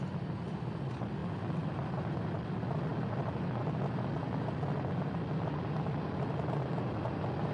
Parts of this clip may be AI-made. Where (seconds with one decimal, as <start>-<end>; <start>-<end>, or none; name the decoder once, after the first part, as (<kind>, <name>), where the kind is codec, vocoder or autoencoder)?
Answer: none